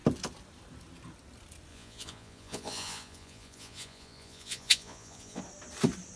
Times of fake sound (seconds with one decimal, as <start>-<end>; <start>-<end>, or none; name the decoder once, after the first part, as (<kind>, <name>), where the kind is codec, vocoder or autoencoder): 1.7-5.4 (vocoder, Vocos)